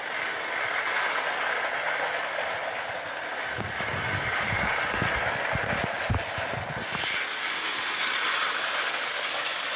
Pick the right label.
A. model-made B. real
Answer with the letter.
B